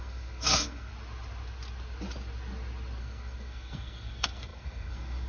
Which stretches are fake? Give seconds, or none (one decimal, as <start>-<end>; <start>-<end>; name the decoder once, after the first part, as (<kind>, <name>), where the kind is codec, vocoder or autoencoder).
0.0-0.9 (codec, SNAC); 3.0-5.3